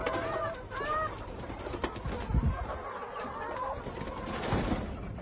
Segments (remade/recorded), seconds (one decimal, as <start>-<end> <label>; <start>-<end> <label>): 0.0-1.6 remade; 1.6-5.2 recorded